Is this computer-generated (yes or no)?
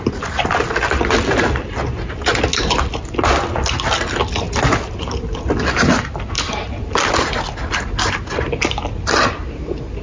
no